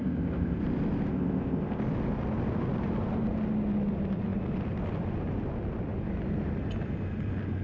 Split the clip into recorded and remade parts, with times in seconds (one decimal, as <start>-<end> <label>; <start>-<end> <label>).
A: 0.0-0.6 remade; 0.6-1.1 recorded; 1.1-1.8 remade; 1.8-7.6 recorded